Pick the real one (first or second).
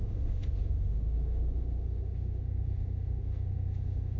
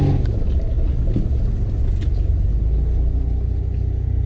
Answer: second